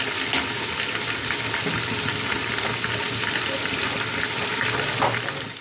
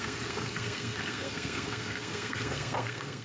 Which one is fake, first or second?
second